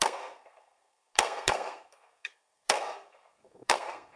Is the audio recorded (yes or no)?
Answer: no